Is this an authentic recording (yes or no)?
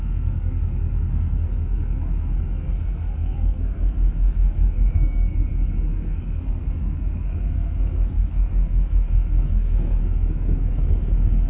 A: no